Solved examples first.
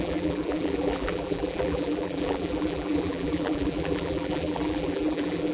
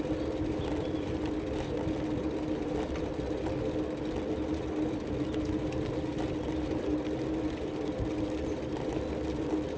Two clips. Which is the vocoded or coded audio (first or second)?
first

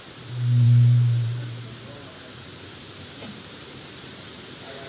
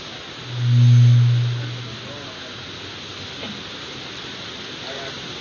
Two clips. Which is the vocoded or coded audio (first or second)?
first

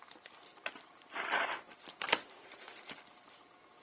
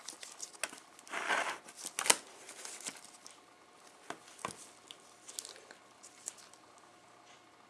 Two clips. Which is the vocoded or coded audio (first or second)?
first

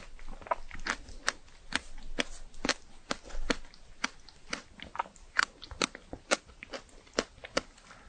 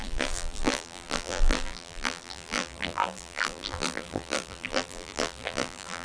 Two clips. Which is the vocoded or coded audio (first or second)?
second